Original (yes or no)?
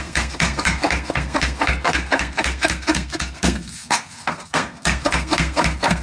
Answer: no